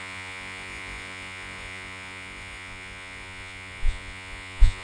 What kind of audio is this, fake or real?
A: fake